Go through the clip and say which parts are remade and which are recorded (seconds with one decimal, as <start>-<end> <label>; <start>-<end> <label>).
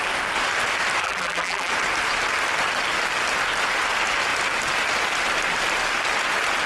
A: 0.0-1.0 recorded; 1.0-1.7 remade; 1.7-6.7 recorded